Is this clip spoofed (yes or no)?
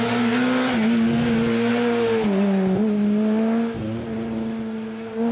no